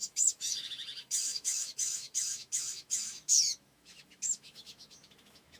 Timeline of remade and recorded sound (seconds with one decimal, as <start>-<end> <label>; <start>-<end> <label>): 0.0-5.6 remade